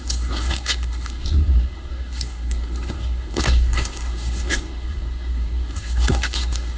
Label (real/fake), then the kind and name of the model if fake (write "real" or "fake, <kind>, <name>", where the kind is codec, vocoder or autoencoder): fake, codec, SNAC